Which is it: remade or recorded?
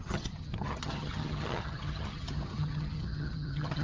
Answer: remade